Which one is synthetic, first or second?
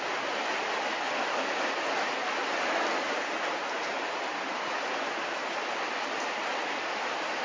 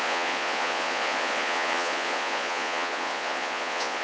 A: second